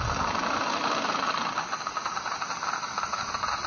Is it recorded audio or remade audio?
recorded